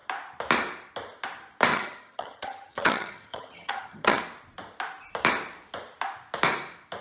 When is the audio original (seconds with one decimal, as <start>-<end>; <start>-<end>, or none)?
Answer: 0.0-1.7; 4.2-7.0